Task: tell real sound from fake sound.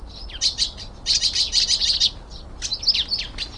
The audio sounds real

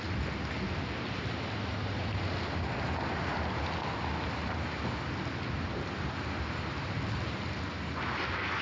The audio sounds real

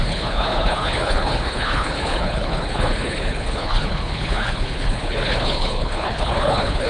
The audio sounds fake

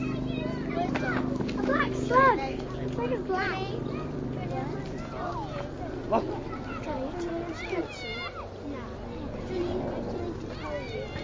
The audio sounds real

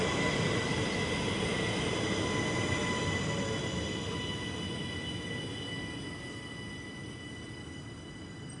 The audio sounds real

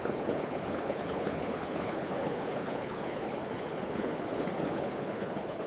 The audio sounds fake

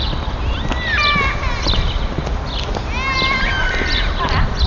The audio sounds real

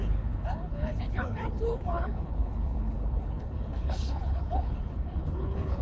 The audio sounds fake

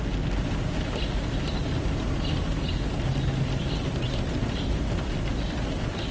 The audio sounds real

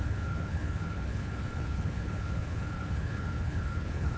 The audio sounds fake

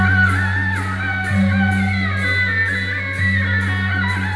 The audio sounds real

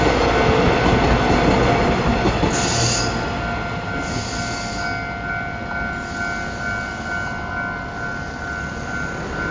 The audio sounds real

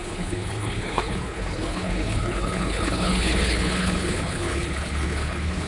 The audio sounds fake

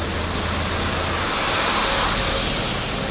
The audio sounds real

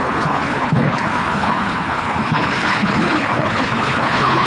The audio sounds fake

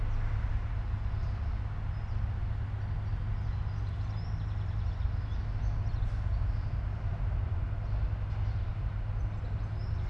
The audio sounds real